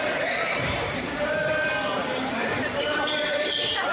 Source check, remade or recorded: remade